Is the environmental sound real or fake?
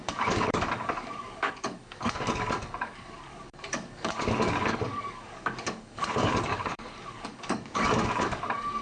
fake